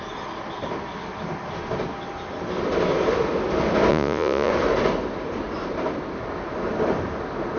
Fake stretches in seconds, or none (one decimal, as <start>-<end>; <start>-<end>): 3.9-4.5